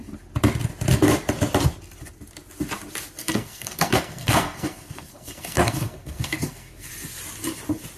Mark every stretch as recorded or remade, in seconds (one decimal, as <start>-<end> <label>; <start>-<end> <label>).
0.0-3.2 recorded; 3.2-6.9 remade; 6.9-8.0 recorded